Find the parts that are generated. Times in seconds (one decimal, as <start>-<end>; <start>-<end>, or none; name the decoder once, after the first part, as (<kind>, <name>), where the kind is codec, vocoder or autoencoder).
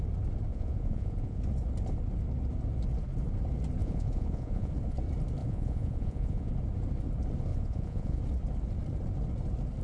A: 0.5-1.4 (vocoder, Vocos); 3.8-4.7; 5.4-6.5; 7.5-8.2